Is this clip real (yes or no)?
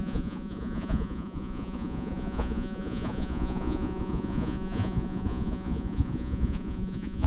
no